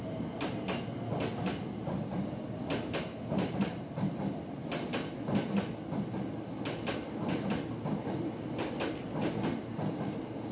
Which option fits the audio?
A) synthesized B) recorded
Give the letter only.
B